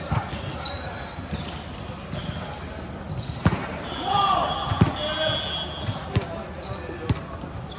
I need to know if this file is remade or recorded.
recorded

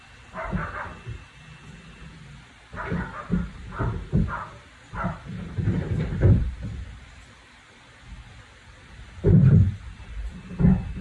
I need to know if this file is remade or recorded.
recorded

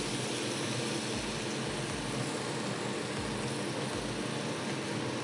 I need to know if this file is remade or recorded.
recorded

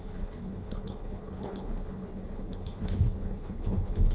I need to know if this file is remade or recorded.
remade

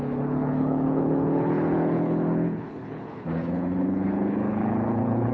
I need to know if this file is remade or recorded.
remade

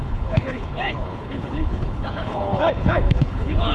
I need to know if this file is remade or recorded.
remade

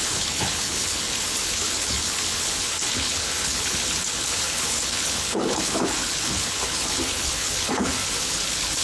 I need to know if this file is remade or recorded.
remade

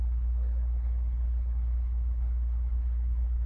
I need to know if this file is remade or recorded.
remade